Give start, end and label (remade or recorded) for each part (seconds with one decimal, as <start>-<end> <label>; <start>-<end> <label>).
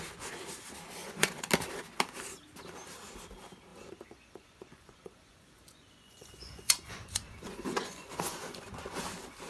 0.0-1.0 recorded; 1.0-1.5 remade; 1.5-3.7 recorded; 3.7-9.0 remade; 9.0-9.5 recorded